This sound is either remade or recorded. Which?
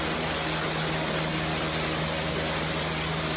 recorded